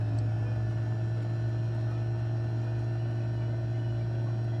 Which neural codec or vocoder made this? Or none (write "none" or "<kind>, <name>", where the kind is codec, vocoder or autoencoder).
none